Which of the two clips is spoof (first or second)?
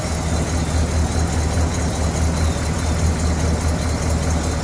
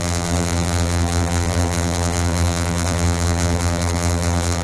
second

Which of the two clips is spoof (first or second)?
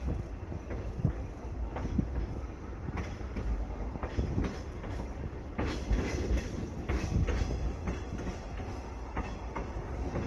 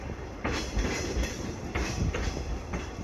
second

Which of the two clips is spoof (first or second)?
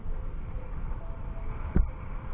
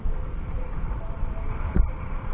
second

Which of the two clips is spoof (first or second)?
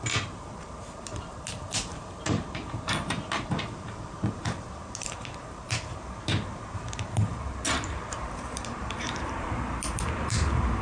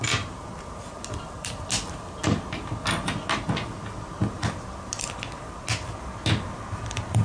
first